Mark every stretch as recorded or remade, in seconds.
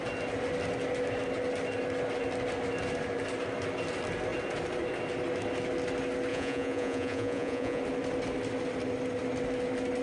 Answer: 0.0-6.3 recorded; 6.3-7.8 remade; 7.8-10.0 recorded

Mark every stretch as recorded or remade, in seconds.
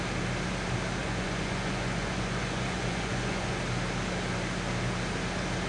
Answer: 0.0-1.0 recorded; 1.0-3.6 remade; 3.6-5.7 recorded